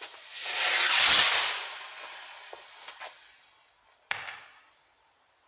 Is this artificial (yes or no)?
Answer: no